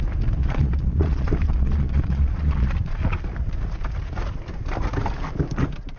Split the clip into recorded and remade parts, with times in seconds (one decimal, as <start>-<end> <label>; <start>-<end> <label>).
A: 0.0-0.4 recorded; 0.4-3.0 remade; 3.0-6.0 recorded